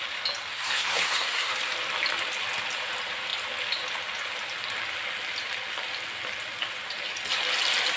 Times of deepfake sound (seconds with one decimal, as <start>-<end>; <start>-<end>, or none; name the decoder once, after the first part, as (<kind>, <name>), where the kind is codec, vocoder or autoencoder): 0.5-1.5 (codec, SNAC)

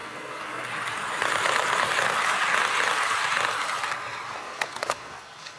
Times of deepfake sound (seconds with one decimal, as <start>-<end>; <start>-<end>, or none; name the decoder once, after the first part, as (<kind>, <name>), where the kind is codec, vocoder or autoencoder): 0.0-0.7 (codec, SNAC); 4.4-5.6

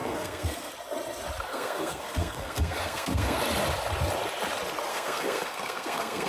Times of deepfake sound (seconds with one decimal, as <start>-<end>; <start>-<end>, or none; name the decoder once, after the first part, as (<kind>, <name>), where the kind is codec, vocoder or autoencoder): 0.0-0.7 (codec, SNAC); 1.5-3.4; 4.9-6.3

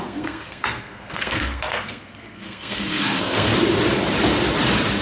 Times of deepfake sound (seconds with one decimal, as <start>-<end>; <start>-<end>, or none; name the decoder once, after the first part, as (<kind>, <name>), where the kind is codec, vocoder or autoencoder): 0.0-3.5 (codec, SNAC)

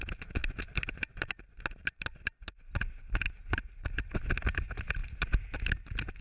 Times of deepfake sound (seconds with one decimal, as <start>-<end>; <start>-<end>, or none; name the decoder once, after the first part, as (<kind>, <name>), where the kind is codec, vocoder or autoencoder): none

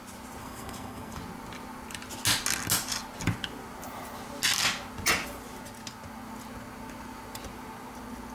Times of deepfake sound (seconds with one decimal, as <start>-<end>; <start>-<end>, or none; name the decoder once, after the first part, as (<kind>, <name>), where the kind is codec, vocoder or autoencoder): 0.4-1.2 (codec, SNAC)

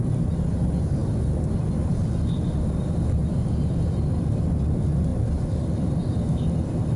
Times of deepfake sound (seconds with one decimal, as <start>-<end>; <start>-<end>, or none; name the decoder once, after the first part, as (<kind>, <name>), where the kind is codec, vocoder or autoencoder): none

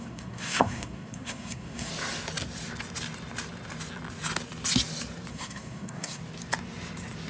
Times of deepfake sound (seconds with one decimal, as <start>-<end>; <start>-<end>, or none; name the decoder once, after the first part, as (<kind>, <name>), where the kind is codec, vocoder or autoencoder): 0.0-1.9 (codec, SNAC); 5.3-6.2